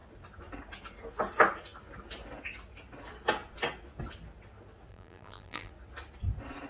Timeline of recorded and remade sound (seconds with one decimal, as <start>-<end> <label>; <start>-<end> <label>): 0.0-4.9 recorded; 4.9-5.7 remade; 5.7-6.7 recorded